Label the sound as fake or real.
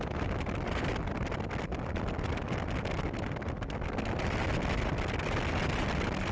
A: real